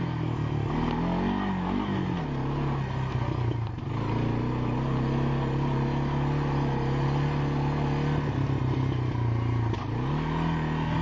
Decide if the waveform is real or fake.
real